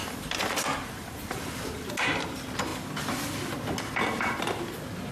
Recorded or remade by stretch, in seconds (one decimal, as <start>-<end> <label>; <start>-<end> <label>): 0.0-1.9 remade; 1.9-5.1 recorded